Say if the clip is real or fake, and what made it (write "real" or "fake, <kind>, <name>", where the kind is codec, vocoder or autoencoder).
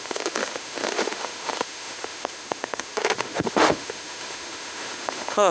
fake, autoencoder, DAC-VAE